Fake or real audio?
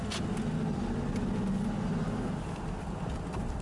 real